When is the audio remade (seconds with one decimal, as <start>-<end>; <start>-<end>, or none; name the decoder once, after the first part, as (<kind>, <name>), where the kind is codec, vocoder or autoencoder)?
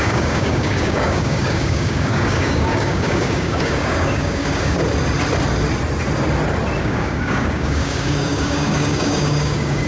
0.0-4.8 (codec, DAC); 6.8-9.9